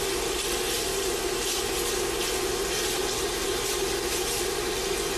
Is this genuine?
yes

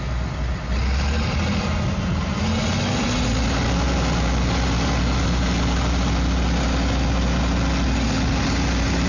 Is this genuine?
yes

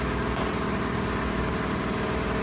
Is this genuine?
yes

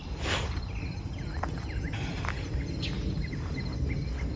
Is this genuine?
yes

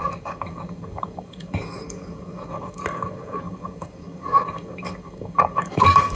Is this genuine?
no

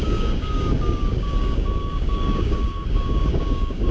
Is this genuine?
no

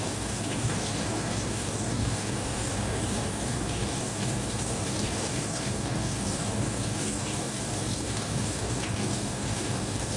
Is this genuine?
no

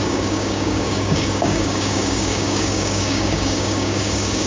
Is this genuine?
no